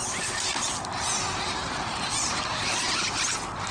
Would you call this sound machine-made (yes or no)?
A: no